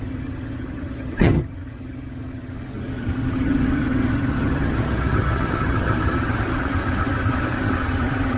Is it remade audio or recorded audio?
remade